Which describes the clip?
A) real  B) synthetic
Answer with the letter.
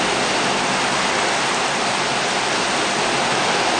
A